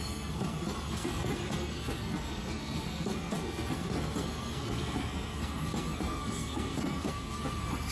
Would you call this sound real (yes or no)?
no